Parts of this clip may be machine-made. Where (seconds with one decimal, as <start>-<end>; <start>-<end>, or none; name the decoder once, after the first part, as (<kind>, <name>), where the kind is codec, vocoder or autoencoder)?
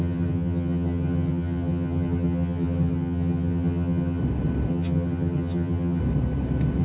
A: 0.0-4.2 (vocoder, HiFi-GAN); 4.7-6.0